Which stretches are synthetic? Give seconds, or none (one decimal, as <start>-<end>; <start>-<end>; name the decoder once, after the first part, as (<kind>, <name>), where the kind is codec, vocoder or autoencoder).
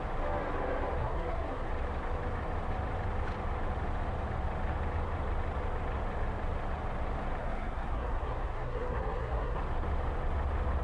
1.0-1.7 (codec, SNAC); 7.4-9.6